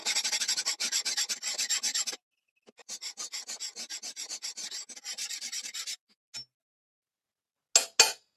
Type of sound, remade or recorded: recorded